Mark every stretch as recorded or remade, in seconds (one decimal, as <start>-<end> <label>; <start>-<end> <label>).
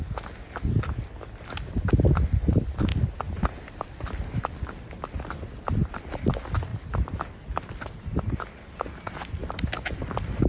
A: 0.0-2.9 recorded; 2.9-4.7 remade; 4.7-5.8 recorded; 5.8-6.3 remade; 6.3-10.5 recorded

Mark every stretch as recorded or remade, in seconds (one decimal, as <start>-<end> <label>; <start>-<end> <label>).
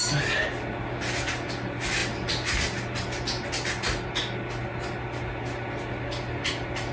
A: 0.0-6.9 recorded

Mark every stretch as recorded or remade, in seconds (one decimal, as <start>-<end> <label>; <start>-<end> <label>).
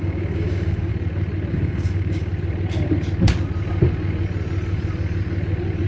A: 0.0-0.9 remade; 0.9-1.5 recorded; 1.5-2.3 remade; 2.3-5.9 recorded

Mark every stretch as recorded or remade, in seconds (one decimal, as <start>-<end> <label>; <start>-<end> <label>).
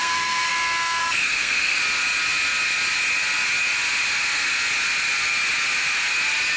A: 0.0-0.5 remade; 0.5-1.0 recorded; 1.0-1.8 remade; 1.8-6.6 recorded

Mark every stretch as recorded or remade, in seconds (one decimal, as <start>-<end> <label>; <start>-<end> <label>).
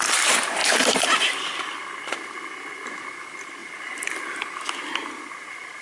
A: 0.0-5.8 recorded